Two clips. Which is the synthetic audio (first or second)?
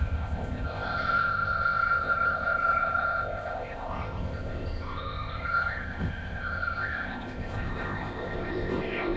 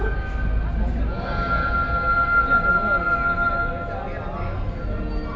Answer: first